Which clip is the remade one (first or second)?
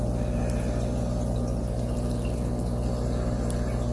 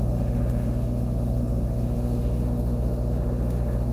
second